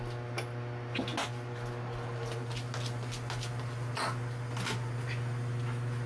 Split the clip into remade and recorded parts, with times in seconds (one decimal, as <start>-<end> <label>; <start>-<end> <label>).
0.0-6.1 recorded